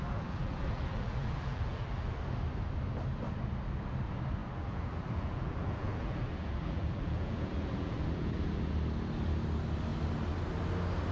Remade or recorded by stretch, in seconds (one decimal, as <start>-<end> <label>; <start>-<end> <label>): 0.0-2.1 remade; 2.1-4.4 recorded; 4.4-8.7 remade; 8.7-11.1 recorded